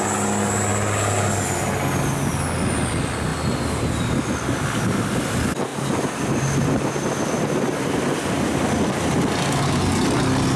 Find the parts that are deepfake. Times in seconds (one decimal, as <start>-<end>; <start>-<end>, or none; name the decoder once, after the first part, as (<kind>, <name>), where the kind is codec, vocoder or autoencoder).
none

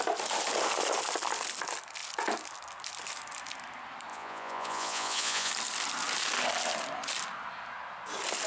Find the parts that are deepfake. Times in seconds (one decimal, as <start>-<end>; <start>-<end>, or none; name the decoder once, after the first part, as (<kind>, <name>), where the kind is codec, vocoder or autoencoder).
4.1-5.5 (vocoder, Vocos)

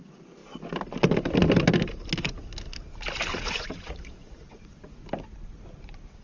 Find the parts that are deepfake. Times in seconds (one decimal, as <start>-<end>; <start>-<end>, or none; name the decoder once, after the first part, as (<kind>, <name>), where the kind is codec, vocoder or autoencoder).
3.3-4.9 (vocoder, Vocos)

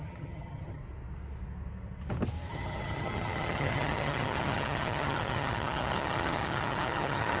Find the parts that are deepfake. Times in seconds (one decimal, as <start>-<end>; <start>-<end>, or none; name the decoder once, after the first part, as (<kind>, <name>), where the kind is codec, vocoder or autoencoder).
0.0-0.8 (vocoder, HiFi-GAN); 2.5-7.4

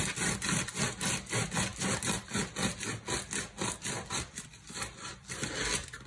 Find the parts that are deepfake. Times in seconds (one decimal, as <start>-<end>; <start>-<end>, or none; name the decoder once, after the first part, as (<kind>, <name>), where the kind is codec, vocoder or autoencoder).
none

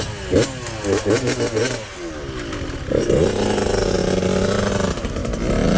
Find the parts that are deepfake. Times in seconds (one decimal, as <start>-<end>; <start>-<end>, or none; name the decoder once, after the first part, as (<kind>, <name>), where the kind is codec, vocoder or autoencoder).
none

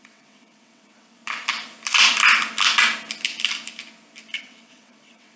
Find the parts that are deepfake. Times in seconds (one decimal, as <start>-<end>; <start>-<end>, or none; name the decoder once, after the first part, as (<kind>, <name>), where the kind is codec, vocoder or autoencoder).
0.0-1.2 (vocoder, WaveNeXt); 4.4-5.4

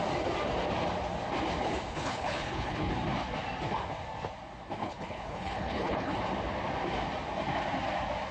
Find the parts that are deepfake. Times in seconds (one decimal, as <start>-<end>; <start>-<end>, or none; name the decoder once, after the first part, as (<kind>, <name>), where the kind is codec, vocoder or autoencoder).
1.9-2.9 (codec, HILCodec); 4.8-6.2